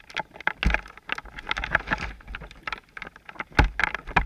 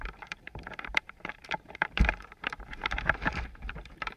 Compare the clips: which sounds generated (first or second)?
second